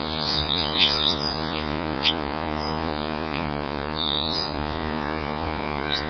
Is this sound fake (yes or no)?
yes